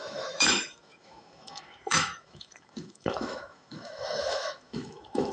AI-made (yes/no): yes